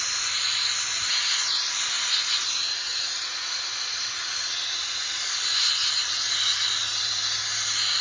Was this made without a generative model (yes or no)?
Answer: yes